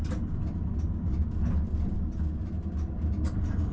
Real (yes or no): yes